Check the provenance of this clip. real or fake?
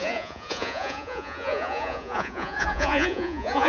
fake